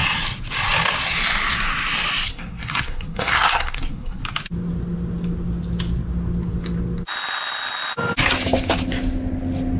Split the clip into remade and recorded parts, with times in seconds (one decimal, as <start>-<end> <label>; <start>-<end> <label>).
0.0-2.3 recorded; 2.3-4.2 remade; 4.2-9.8 recorded